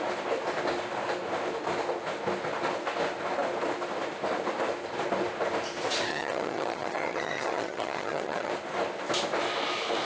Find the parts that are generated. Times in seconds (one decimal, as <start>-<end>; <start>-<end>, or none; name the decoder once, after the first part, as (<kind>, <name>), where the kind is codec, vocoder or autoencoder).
6.1-8.5 (vocoder, HiFi-GAN)